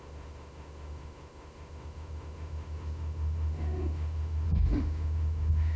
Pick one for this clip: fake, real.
fake